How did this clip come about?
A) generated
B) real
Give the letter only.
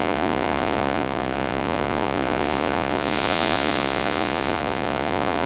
A